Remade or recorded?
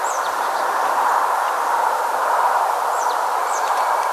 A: remade